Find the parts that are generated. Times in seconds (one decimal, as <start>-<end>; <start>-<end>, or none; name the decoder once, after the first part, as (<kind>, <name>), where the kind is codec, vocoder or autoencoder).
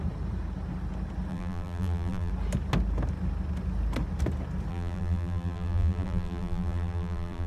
1.3-2.3 (vocoder, BigVGAN v2); 4.7-7.5